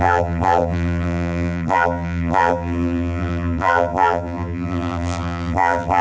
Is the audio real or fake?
fake